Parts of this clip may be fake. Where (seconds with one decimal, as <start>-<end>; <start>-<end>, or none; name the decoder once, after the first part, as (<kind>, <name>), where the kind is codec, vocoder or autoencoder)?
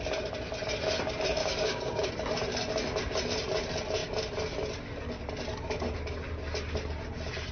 1.4-2.1 (codec, DAC)